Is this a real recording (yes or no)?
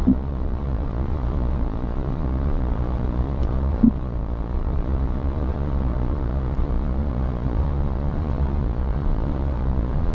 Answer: no